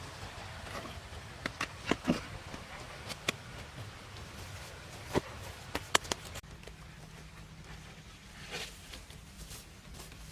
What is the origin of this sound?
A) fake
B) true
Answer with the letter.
B